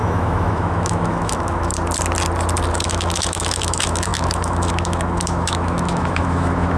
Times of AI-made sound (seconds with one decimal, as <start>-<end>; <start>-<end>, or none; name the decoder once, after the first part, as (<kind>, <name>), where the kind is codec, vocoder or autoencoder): 0.0-1.7 (autoencoder, DAC-VAE); 2.7-6.8